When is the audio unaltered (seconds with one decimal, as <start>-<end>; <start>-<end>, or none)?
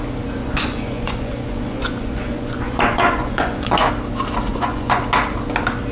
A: 0.0-0.4; 3.9-4.5; 5.0-5.9